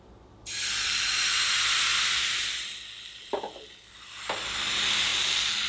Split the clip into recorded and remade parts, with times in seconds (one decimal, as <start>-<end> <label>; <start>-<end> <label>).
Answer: 0.0-5.7 recorded